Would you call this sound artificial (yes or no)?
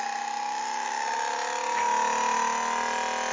no